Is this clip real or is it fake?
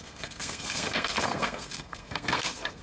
fake